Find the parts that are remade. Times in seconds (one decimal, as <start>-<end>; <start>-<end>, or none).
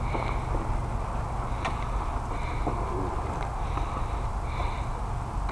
none